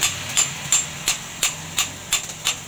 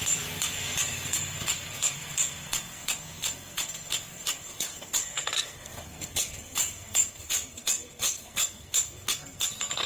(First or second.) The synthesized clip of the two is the second